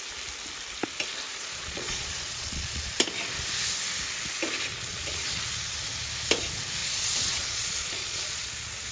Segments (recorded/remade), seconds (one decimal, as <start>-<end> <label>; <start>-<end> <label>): 0.0-1.3 recorded; 1.3-2.9 remade; 2.9-4.7 recorded; 4.7-5.4 remade; 5.4-6.8 recorded; 6.8-8.5 remade; 8.5-8.9 recorded